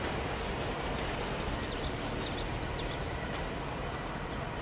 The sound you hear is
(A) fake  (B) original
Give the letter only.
A